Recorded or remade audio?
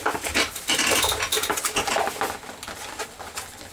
recorded